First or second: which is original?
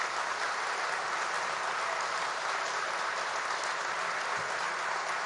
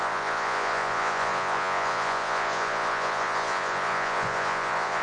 first